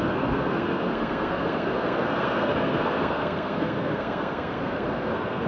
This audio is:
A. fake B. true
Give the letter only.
A